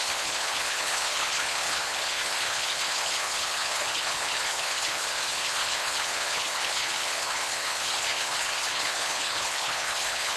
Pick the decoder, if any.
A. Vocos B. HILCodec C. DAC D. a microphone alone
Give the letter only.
B